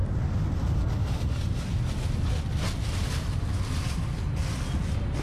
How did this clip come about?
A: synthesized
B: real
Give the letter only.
B